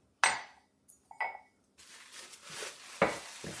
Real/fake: real